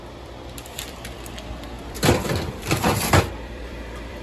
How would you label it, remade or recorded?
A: remade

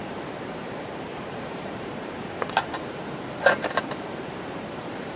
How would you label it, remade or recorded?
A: remade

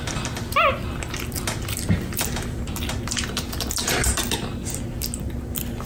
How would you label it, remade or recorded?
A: recorded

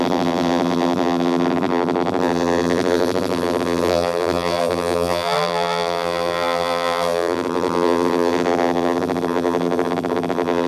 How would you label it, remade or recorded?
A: remade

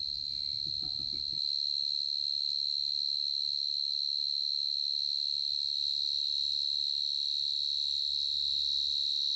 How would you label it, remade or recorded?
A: recorded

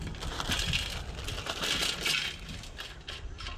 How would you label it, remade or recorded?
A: recorded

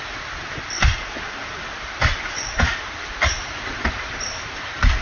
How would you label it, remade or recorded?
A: remade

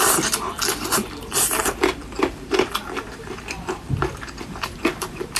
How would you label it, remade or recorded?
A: remade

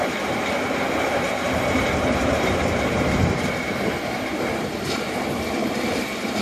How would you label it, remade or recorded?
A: remade